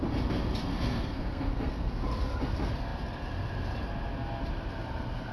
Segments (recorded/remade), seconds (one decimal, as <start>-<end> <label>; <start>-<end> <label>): 0.0-0.7 recorded; 0.7-2.0 remade; 2.0-5.3 recorded